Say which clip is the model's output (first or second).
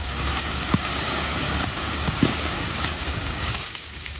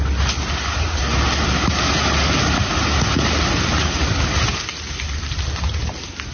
first